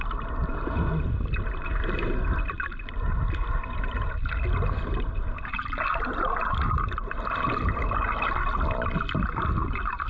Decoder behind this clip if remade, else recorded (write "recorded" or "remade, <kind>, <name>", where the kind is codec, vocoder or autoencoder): recorded